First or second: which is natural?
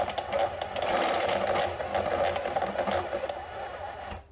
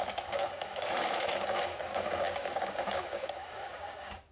first